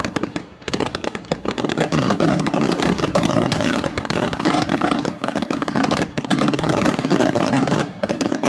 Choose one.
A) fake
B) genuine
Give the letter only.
A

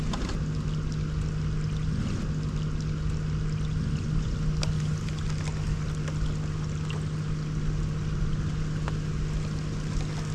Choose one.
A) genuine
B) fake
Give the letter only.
A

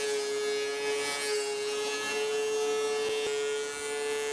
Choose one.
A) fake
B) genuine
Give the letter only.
B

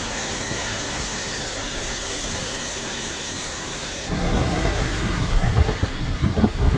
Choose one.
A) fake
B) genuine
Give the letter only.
A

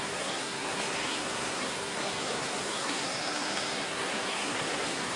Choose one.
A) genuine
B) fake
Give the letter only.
B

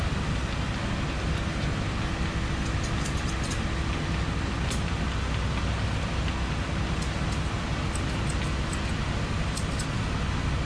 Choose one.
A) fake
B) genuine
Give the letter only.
B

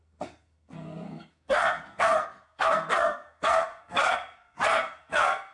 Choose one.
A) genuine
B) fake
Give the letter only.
B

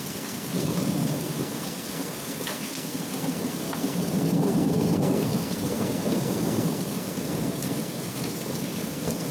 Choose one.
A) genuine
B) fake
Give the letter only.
B